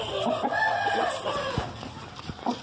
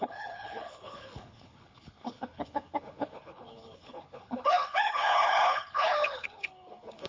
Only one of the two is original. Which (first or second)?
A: first